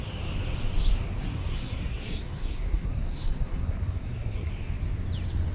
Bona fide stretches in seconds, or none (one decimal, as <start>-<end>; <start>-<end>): 0.0-1.2; 4.5-5.5